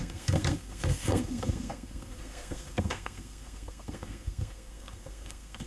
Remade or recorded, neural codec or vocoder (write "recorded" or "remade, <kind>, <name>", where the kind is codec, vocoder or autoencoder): remade, codec, SNAC